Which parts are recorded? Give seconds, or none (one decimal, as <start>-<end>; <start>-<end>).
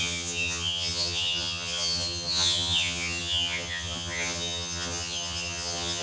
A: none